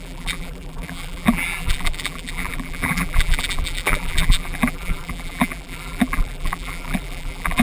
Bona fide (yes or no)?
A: no